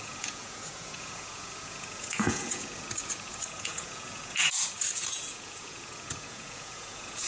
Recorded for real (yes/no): no